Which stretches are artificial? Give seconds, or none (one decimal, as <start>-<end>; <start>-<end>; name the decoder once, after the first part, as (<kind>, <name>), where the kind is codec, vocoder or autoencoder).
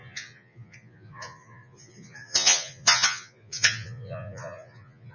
0.0-5.1 (vocoder, Vocos)